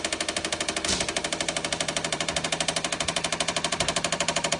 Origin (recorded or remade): remade